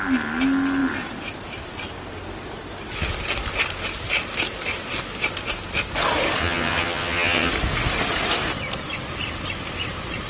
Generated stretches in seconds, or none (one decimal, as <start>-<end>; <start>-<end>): 6.4-7.5